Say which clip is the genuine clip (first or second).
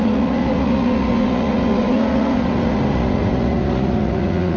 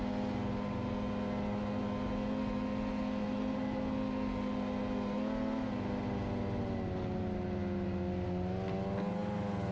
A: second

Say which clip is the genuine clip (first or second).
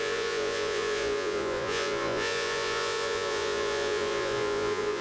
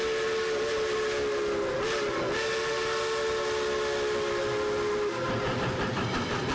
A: second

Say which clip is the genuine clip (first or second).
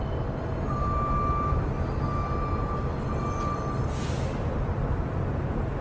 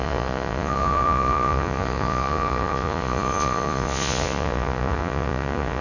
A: first